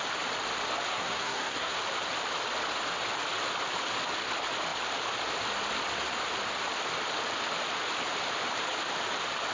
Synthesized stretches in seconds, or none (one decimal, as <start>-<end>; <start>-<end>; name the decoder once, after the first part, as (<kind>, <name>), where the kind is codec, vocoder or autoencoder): 0.9-1.8 (codec, SNAC)